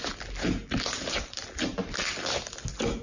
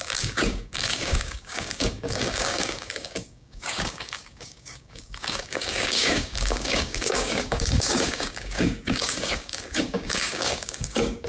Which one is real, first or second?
first